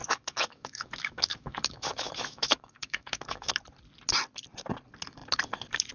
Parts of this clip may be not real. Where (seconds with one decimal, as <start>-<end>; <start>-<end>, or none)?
0.0-3.5